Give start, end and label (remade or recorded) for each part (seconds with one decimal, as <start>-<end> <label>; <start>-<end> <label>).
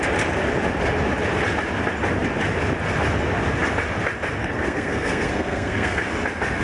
0.0-4.4 recorded; 4.4-6.0 remade; 6.0-6.6 recorded